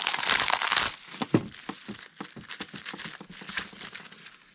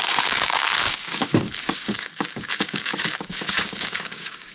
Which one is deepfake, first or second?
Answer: second